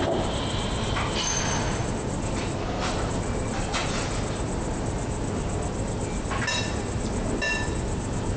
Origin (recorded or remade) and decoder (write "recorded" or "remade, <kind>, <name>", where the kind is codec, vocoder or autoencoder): recorded